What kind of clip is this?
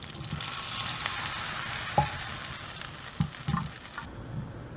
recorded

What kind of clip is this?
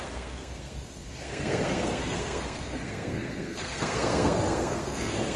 remade